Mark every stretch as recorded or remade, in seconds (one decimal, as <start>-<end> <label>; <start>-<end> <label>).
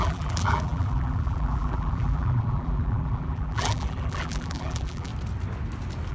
0.0-5.1 remade; 5.1-6.1 recorded